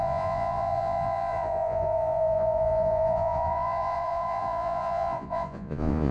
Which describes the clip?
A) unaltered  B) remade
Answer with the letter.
B